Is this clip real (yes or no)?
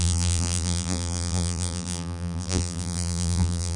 no